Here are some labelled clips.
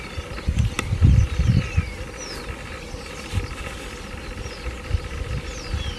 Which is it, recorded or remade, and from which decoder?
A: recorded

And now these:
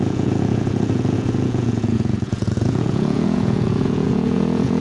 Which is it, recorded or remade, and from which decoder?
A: remade, vocoder, Vocos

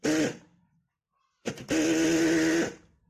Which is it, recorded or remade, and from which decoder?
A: recorded